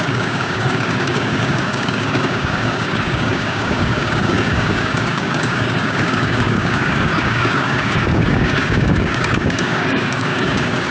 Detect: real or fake fake